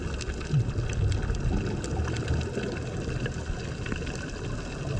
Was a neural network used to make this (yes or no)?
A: no